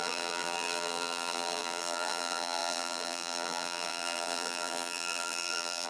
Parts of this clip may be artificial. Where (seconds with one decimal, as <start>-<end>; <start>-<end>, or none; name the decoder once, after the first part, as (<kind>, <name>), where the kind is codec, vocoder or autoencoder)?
0.0-5.9 (vocoder, BigVGAN v2)